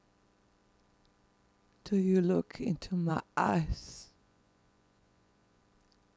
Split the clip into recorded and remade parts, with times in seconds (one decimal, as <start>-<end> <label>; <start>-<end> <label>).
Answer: 0.0-3.7 recorded; 3.7-5.6 remade; 5.6-6.2 recorded